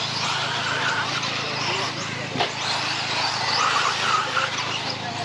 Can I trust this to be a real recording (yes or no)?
yes